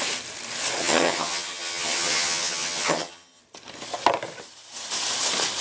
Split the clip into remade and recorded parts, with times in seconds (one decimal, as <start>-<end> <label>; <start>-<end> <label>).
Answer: 0.0-0.8 recorded; 0.8-3.4 remade; 3.4-5.6 recorded